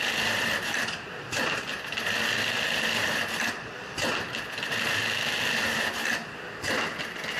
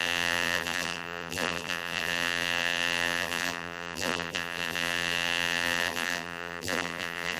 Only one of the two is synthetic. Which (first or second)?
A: second